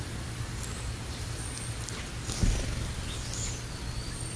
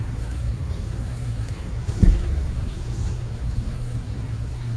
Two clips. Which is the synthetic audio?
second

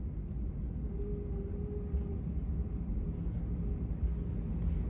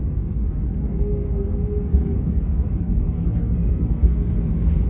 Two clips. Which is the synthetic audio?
second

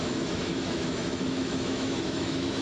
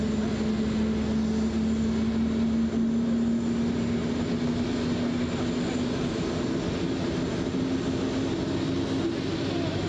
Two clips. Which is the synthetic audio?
first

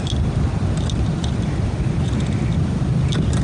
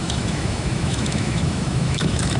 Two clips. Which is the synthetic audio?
second